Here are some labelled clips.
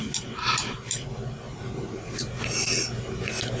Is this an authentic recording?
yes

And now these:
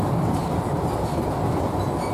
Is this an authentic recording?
yes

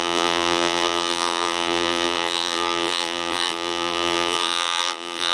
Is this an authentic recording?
no